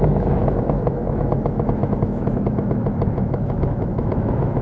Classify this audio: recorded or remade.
remade